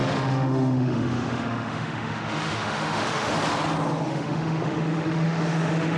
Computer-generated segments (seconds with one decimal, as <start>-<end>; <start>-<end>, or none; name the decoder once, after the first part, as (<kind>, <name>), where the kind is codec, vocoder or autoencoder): 0.0-3.3 (autoencoder, DAC-VAE); 4.1-6.0